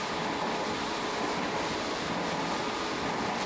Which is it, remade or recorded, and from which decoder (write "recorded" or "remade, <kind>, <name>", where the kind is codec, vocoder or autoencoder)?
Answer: recorded